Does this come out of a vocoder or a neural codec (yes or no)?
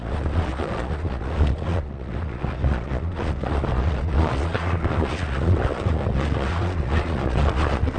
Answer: yes